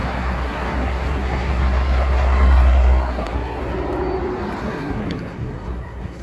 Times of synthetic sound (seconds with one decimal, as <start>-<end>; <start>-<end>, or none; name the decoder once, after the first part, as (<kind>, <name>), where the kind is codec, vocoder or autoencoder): 0.0-3.6 (codec, SNAC); 4.6-6.2